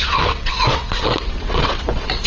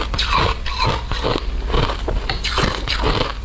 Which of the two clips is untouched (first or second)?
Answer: second